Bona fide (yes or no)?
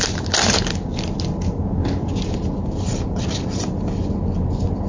yes